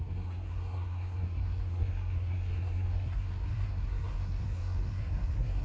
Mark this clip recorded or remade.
remade